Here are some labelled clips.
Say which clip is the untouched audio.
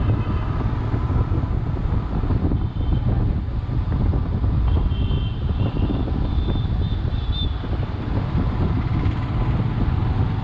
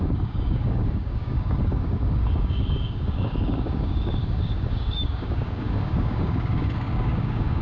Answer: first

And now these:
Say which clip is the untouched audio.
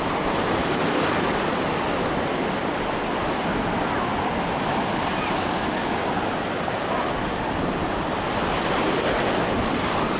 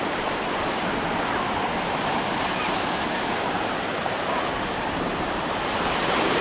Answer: first